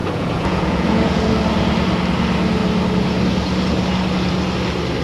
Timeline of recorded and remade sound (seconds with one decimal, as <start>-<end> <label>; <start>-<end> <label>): 0.0-1.2 remade; 1.2-5.0 recorded